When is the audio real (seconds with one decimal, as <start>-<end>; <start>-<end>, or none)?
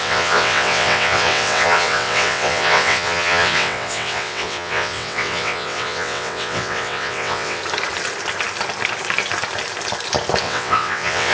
7.6-10.4